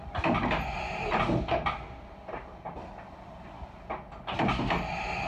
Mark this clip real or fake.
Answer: real